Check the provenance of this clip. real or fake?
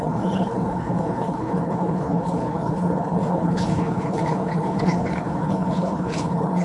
fake